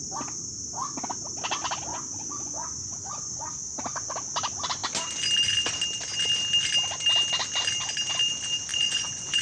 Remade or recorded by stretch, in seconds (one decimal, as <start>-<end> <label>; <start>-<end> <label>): 0.0-1.9 recorded; 1.9-3.4 remade; 3.4-8.7 recorded; 8.7-9.4 remade